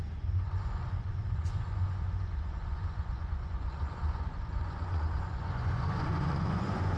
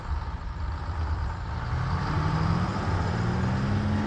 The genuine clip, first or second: second